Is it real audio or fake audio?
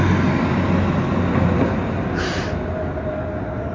real